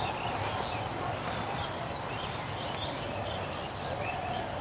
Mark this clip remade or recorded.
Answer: recorded